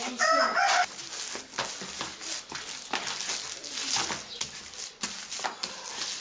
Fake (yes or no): no